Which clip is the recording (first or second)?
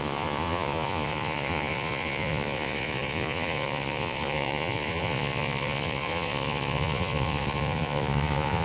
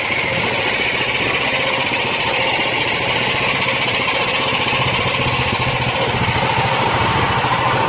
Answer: second